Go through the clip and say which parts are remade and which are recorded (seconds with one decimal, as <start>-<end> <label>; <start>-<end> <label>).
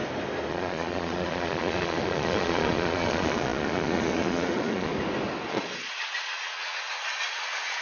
0.0-0.5 recorded; 0.5-4.9 remade; 4.9-5.5 recorded; 5.5-7.8 remade